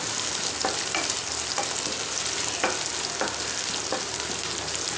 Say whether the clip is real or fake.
real